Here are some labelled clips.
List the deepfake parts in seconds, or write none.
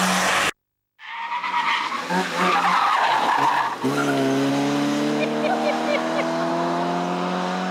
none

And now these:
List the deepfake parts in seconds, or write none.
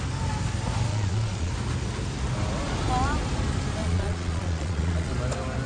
0.9-1.5 (vocoder, Vocos); 3.8-5.1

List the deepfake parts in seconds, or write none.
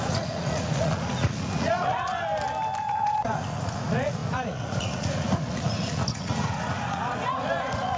0.0-2.1 (vocoder, Vocos); 2.9-8.0